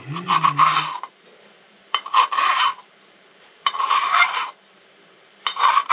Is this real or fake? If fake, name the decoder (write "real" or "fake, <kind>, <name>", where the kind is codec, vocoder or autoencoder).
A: fake, vocoder, BigVGAN v2